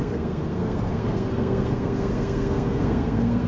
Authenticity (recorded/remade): remade